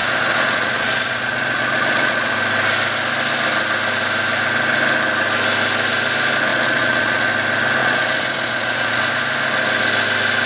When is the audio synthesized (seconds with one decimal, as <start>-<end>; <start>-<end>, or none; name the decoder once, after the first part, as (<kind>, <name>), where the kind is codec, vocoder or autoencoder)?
0.0-2.3 (vocoder, Vocos); 6.5-7.3; 7.8-9.0